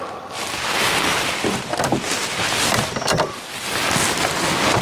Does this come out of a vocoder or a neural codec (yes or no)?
no